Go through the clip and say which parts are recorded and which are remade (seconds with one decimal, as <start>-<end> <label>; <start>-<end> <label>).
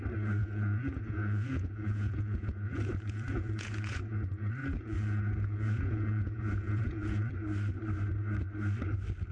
0.0-0.4 recorded; 0.4-4.0 remade; 4.0-4.6 recorded; 4.6-7.3 remade; 7.3-9.3 recorded